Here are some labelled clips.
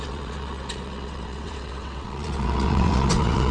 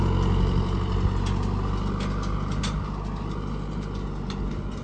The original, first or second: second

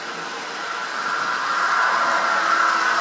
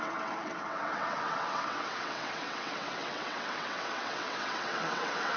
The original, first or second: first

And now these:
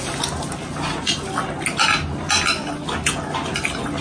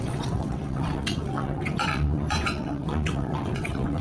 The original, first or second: first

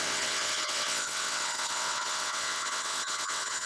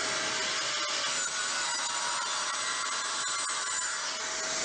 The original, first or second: second